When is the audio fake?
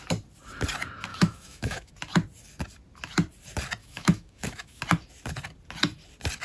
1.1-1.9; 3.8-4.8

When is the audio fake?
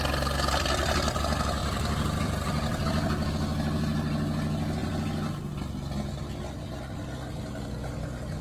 1.6-3.3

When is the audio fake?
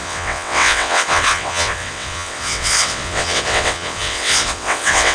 0.0-5.1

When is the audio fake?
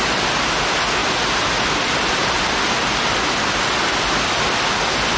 none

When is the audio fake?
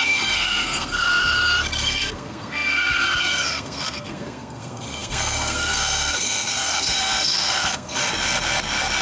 0.0-1.1; 1.8-8.0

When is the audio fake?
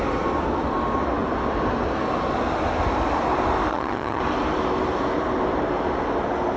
3.7-4.2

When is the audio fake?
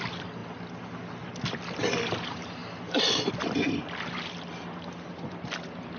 none